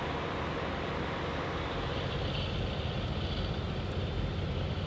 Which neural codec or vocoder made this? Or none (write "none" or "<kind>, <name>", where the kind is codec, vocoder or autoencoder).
none